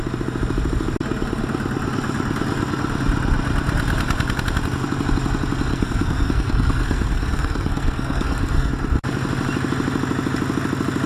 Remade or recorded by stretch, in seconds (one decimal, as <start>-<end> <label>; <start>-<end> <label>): 0.0-5.7 recorded; 5.7-8.7 remade; 8.7-11.1 recorded